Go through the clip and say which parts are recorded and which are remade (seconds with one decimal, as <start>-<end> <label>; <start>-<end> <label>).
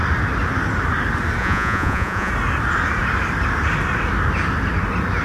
0.0-1.4 recorded; 1.4-2.3 remade; 2.3-5.2 recorded